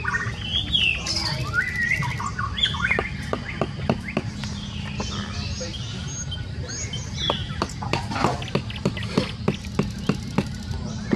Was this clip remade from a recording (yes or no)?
no